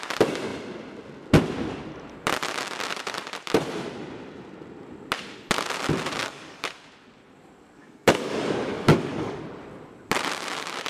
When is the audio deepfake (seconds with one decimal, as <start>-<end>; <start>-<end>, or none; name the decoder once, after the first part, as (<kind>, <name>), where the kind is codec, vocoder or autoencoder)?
6.2-6.7 (codec, DAC); 7.8-9.4